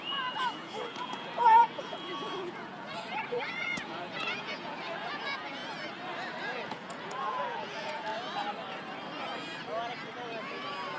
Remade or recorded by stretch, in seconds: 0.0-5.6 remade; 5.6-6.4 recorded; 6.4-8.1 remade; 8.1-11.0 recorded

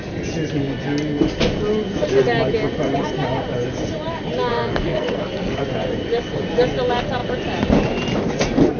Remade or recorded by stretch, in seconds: 0.0-4.5 recorded; 4.5-5.6 remade; 5.6-8.8 recorded

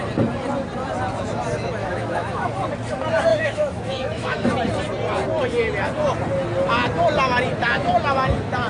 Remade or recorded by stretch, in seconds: 0.0-1.8 recorded; 1.8-2.5 remade; 2.5-3.3 recorded; 3.3-4.5 remade; 4.5-8.7 recorded

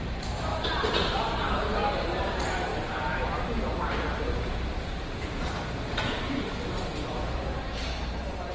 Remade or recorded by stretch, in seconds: 0.0-8.5 remade

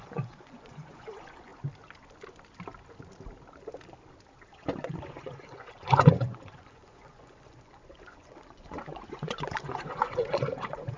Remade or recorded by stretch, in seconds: 0.0-1.5 remade; 1.5-4.9 recorded; 4.9-11.0 remade

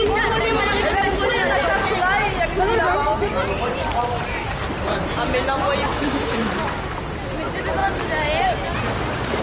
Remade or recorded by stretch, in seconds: 0.0-5.9 recorded; 5.9-6.5 remade; 6.5-9.4 recorded

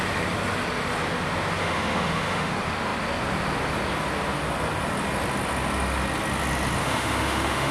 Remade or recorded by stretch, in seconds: 0.0-1.6 recorded; 1.6-2.5 remade; 2.5-6.8 recorded; 6.8-7.7 remade

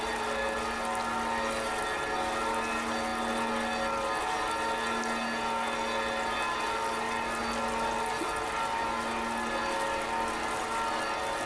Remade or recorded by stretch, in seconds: 0.0-11.5 recorded